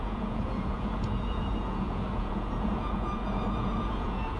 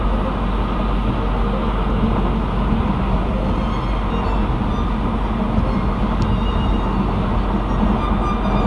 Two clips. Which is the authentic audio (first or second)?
second